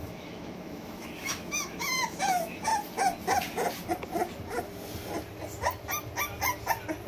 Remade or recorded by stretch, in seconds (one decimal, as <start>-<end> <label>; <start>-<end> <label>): 0.0-2.7 remade; 2.7-7.1 recorded